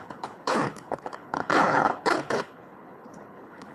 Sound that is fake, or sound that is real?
fake